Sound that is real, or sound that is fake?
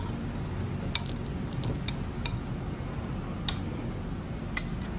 real